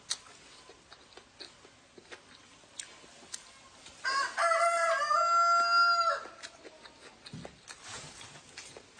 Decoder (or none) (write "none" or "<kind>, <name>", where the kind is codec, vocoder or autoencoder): none